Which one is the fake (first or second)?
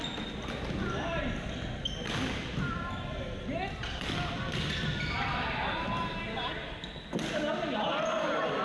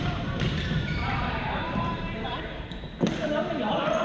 second